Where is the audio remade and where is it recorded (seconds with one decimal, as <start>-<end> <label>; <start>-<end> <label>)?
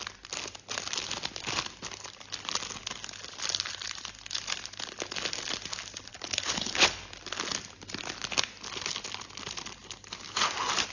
0.0-6.1 recorded; 6.1-7.0 remade; 7.0-10.9 recorded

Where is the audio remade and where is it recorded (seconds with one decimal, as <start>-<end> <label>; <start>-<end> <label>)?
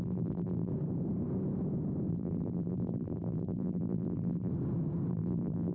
0.0-0.7 remade; 0.7-2.1 recorded; 2.1-4.5 remade; 4.5-5.1 recorded; 5.1-5.7 remade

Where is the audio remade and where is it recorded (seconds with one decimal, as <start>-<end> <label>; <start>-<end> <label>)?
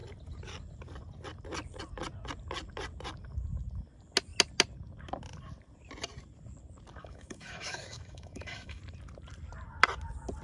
0.0-7.0 recorded; 7.0-8.8 remade; 8.8-10.4 recorded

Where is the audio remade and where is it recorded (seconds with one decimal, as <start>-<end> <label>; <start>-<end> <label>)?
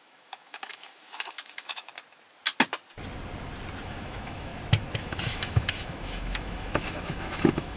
0.0-1.9 remade; 1.9-3.8 recorded; 3.8-4.5 remade; 4.5-5.0 recorded; 5.0-7.8 remade